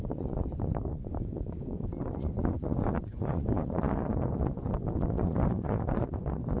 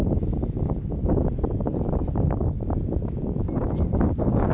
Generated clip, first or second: first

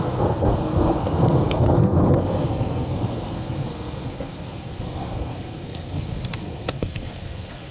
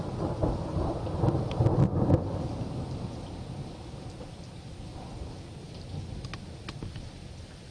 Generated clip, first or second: first